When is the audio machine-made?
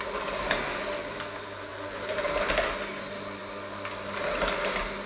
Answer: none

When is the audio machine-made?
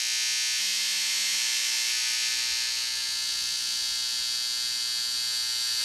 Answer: 0.6-1.9